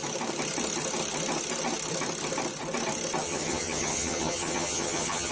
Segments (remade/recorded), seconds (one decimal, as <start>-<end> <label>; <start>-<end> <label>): 0.0-3.2 recorded; 3.2-5.3 remade